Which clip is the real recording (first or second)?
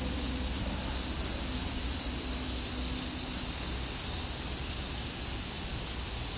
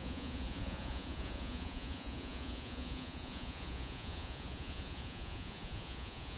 first